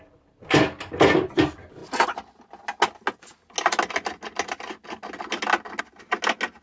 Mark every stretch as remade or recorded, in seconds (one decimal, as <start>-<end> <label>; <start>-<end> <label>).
0.0-6.6 recorded